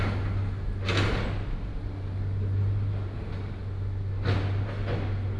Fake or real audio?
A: real